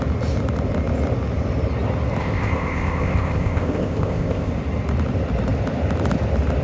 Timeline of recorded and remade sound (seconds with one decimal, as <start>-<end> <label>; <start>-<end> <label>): 0.0-2.2 recorded; 2.2-4.5 remade; 4.5-6.6 recorded